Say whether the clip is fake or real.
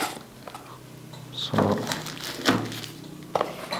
real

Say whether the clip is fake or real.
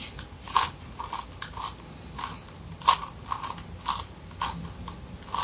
real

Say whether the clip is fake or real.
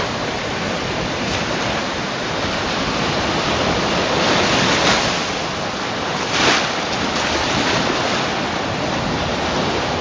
real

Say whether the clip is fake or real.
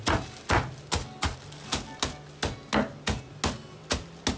real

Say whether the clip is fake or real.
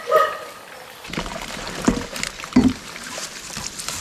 real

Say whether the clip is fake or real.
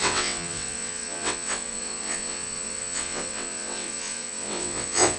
fake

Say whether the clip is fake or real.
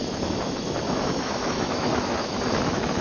fake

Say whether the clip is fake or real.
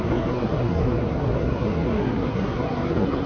fake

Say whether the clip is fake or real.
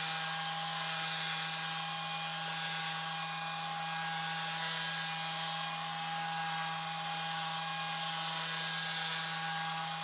real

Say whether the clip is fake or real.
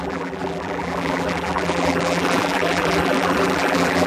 fake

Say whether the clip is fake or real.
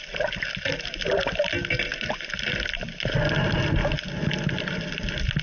real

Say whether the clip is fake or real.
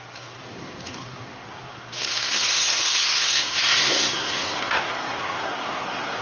fake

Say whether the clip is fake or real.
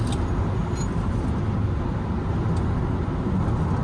real